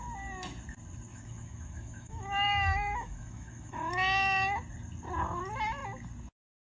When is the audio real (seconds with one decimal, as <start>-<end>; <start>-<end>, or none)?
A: 0.0-1.1; 3.9-6.7